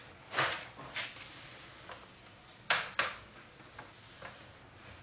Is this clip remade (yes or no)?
no